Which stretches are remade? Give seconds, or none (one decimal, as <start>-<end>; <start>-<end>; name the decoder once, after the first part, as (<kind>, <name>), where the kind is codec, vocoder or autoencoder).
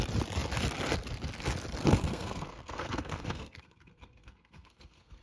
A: 1.8-5.2 (codec, SNAC)